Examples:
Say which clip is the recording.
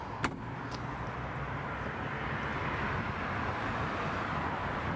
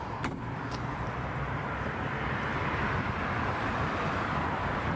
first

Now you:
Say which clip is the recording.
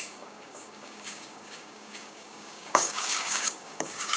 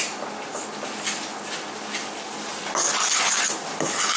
second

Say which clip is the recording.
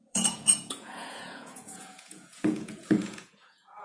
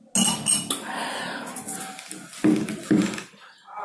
second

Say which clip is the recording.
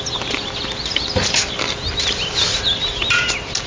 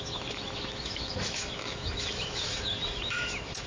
first